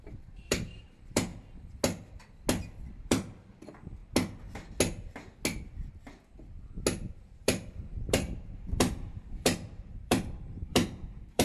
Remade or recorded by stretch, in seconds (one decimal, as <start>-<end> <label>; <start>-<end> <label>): 0.0-1.3 remade; 1.3-3.0 recorded; 3.0-4.0 remade; 4.0-7.1 recorded; 7.1-11.4 remade